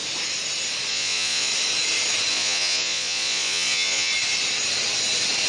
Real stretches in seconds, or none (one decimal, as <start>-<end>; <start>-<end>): 0.0-0.9; 1.5-2.3; 4.1-5.5